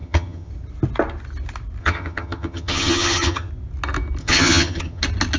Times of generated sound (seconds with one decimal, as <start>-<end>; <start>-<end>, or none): 0.0-0.5; 1.8-3.5; 4.2-5.0